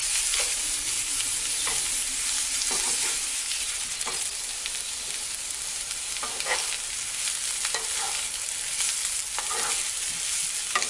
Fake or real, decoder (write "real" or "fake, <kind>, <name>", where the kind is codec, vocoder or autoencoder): real